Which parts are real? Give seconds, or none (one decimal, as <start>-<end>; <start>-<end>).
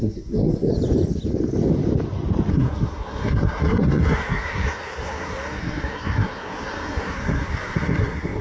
0.7-2.5